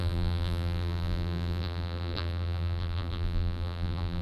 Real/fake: fake